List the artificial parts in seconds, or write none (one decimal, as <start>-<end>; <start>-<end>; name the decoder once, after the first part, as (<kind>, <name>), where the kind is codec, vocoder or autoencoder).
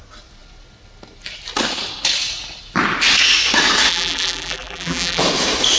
3.9-5.2 (vocoder, BigVGAN v2)